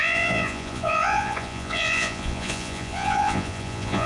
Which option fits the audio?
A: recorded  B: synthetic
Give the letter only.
B